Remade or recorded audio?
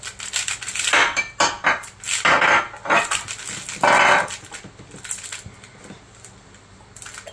recorded